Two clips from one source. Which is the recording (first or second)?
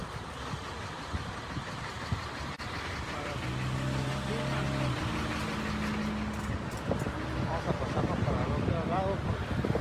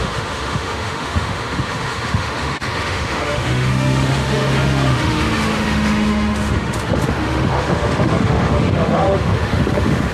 first